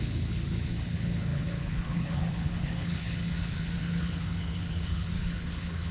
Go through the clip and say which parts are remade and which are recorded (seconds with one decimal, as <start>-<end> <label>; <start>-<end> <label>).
0.0-5.9 remade